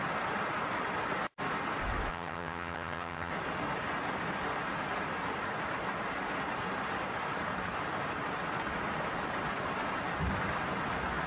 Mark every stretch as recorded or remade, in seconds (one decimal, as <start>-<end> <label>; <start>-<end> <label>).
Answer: 0.0-2.1 recorded; 2.1-3.3 remade; 3.3-11.3 recorded